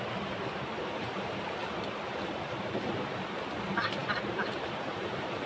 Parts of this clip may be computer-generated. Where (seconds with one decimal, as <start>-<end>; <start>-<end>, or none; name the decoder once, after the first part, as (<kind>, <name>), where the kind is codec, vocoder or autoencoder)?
0.0-1.6 (vocoder, BigVGAN v2); 2.3-5.5

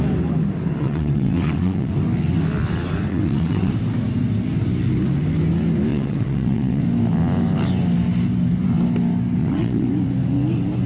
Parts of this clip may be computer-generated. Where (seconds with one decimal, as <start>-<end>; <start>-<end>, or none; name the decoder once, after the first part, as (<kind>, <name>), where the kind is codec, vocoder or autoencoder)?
0.8-1.9 (vocoder, WaveNeXt); 3.1-3.7; 5.9-6.8; 9.4-9.9

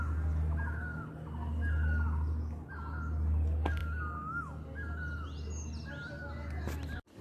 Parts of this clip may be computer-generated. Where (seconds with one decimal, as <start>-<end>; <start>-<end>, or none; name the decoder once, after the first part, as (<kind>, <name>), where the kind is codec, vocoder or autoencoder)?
none

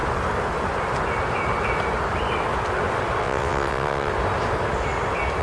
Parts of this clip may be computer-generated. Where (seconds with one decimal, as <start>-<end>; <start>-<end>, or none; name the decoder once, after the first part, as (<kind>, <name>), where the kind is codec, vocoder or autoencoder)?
3.2-4.1 (vocoder, WaveNeXt)

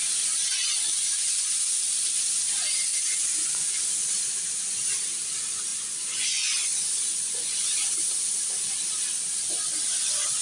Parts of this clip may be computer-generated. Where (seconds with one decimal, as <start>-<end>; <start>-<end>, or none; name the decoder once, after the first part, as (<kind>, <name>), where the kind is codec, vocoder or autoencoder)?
0.9-1.7 (vocoder, Vocos); 2.9-3.8; 5.7-7.9

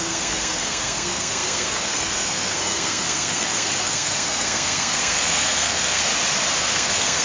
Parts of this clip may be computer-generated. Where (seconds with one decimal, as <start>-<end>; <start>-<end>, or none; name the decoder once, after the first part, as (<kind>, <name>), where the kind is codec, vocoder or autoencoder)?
0.0-6.1 (codec, SNAC); 6.6-7.2

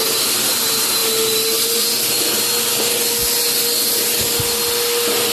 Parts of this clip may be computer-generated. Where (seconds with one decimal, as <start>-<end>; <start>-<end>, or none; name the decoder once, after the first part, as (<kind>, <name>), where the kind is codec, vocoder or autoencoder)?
none